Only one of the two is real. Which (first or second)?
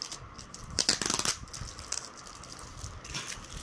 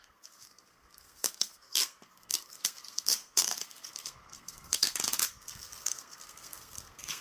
first